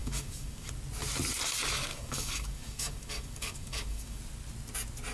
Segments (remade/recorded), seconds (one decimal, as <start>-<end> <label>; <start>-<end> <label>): 0.0-0.7 remade; 0.7-1.9 recorded; 1.9-4.2 remade; 4.2-5.1 recorded